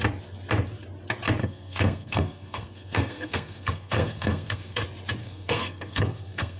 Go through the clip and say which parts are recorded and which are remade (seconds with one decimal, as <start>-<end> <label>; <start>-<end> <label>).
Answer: 0.0-1.4 recorded; 1.4-4.8 remade; 4.8-5.2 recorded; 5.2-6.6 remade